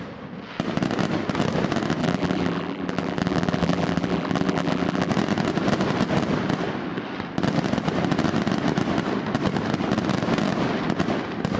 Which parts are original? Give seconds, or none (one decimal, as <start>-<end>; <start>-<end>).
0.0-2.0; 5.1-11.6